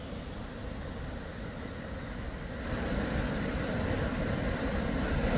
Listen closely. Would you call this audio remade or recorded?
recorded